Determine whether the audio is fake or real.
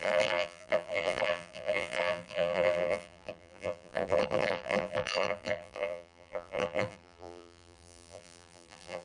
fake